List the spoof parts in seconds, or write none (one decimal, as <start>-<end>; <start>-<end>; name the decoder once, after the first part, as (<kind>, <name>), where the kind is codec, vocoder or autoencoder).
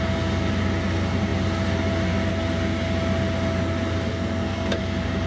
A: 4.1-4.8 (codec, SNAC)